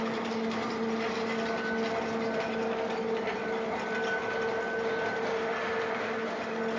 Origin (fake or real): real